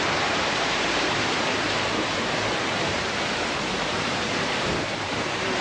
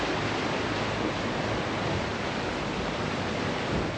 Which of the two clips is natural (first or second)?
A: second